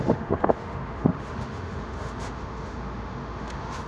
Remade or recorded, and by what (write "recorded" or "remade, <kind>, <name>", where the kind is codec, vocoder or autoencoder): remade, autoencoder, DAC-VAE